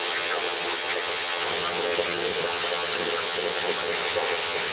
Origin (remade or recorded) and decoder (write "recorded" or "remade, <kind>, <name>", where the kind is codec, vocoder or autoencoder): remade, vocoder, HiFi-GAN